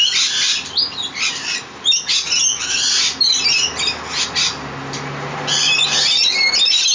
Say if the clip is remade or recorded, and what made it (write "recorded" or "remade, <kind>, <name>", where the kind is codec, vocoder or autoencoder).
recorded